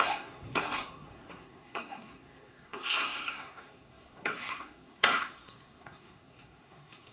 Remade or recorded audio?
remade